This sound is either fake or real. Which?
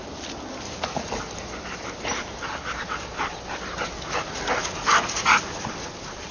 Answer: real